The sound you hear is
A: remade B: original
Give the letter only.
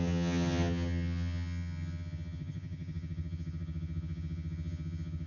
A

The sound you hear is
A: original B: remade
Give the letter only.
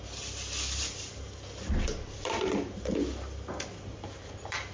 A